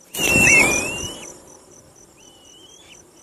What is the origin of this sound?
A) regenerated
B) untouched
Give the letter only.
A